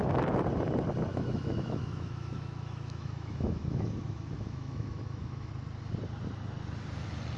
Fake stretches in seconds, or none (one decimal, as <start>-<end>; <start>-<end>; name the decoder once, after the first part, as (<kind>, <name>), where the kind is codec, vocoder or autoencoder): 1.1-5.5 (autoencoder, DAC-VAE)